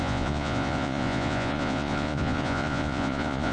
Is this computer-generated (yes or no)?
yes